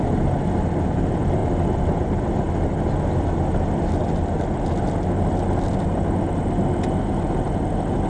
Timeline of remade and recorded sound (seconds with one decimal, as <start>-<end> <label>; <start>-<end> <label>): 0.0-8.1 recorded